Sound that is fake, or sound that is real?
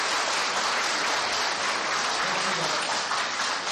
real